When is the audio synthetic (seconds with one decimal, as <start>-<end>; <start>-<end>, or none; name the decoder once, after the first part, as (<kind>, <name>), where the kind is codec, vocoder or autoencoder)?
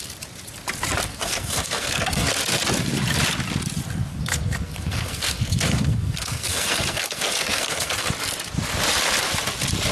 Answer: 1.1-2.3 (codec, SNAC); 4.1-8.1